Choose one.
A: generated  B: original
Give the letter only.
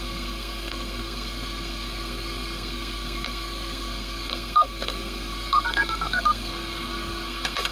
A